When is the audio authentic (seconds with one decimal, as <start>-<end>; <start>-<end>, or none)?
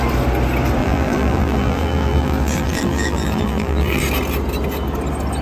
0.0-0.8; 4.0-5.4